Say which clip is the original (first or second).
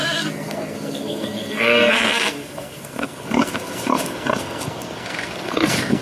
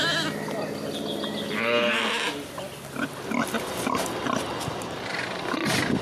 second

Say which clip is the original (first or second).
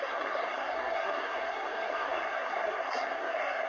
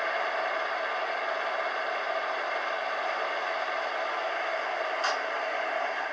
second